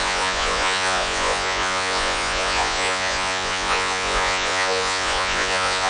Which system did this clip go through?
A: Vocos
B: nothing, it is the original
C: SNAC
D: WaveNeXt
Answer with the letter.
A